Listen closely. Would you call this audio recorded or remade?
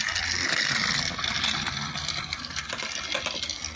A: recorded